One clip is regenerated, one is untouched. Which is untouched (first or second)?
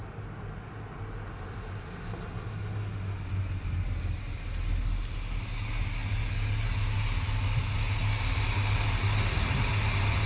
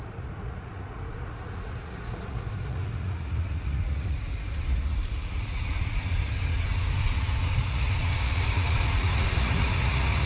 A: first